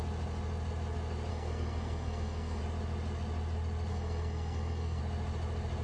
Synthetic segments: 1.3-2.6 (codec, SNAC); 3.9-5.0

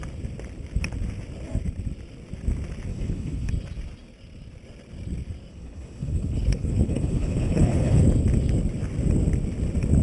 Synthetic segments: 2.9-3.5 (codec, HILCodec); 5.5-8.0